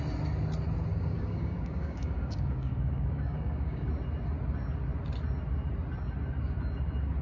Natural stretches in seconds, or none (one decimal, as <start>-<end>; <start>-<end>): 0.0-0.9; 3.9-7.2